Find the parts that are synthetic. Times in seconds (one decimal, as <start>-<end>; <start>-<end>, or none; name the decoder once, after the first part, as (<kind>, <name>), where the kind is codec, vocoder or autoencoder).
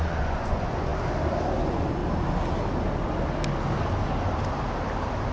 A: 0.0-0.9 (vocoder, Vocos); 1.6-2.0